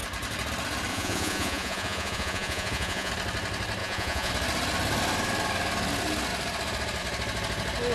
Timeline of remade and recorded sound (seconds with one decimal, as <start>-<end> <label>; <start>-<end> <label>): 0.0-0.9 recorded; 0.9-3.1 remade; 3.1-3.8 recorded; 3.8-4.3 remade; 4.3-7.9 recorded